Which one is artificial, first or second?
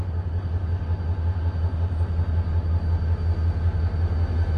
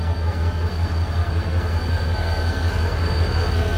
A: second